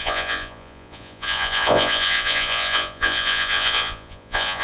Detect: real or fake fake